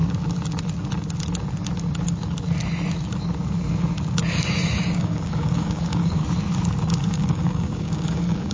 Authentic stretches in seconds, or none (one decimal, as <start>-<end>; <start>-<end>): 0.0-4.3; 6.2-7.0